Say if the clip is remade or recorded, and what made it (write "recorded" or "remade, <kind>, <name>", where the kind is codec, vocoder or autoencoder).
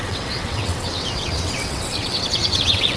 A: remade, vocoder, WaveNeXt